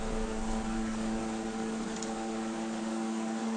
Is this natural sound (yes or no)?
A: no